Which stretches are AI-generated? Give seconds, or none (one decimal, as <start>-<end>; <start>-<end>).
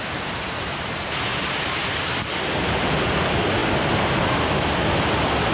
none